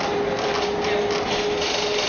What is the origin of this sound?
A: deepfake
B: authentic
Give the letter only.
B